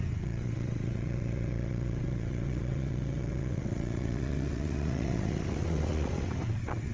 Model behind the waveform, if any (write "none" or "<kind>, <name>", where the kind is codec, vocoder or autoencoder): vocoder, WaveNeXt